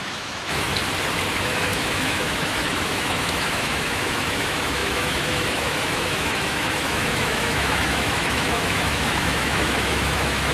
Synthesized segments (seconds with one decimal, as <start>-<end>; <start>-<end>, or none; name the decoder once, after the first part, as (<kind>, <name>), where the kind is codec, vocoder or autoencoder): 0.0-0.7 (autoencoder, DAC-VAE); 1.3-10.5